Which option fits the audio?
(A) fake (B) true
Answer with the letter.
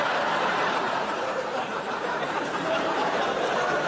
A